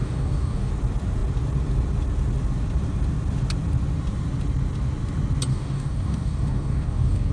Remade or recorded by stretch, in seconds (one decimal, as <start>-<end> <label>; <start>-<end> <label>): 0.0-0.7 remade; 0.7-5.5 recorded; 5.5-7.3 remade